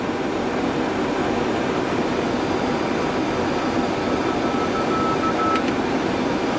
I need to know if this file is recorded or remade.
recorded